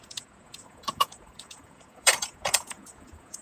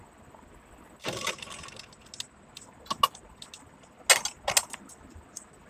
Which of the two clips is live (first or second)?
second